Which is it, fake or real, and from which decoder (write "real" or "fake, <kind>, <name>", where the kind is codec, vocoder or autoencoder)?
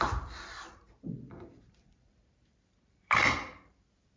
fake, vocoder, BigVGAN v2